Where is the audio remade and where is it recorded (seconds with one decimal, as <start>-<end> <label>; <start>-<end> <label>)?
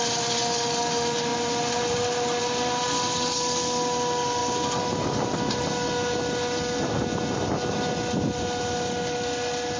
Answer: 0.0-9.8 recorded